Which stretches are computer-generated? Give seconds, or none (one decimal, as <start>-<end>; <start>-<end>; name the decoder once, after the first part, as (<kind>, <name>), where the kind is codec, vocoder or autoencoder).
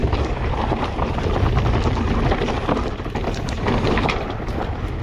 0.0-0.6 (vocoder, BigVGAN v2)